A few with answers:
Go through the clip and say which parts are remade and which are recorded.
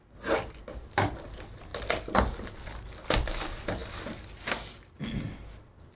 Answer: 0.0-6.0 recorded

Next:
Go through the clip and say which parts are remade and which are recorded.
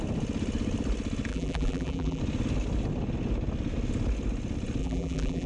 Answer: 0.0-1.3 recorded; 1.3-2.2 remade; 2.2-4.8 recorded; 4.8-5.5 remade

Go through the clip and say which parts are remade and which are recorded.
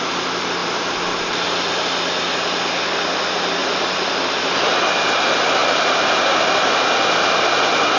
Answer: 0.0-0.6 recorded; 0.6-1.2 remade; 1.2-3.6 recorded; 3.6-4.5 remade; 4.5-8.0 recorded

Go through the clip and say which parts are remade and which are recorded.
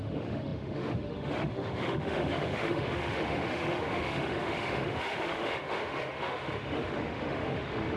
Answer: 0.0-8.0 remade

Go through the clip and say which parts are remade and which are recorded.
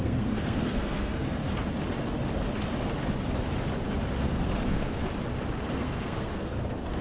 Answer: 0.0-1.4 remade; 1.4-4.2 recorded; 4.2-5.0 remade; 5.0-5.7 recorded; 5.7-7.0 remade